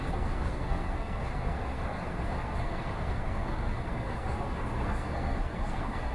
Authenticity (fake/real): fake